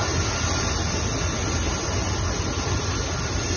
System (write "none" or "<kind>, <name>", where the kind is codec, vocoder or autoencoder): none